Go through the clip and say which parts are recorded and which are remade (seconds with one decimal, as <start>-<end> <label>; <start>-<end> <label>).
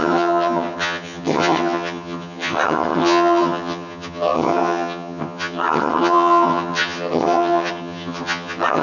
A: 0.0-8.8 remade